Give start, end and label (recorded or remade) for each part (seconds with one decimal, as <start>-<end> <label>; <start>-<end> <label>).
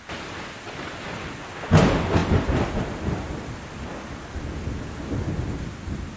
0.0-2.2 recorded; 2.2-2.9 remade; 2.9-6.2 recorded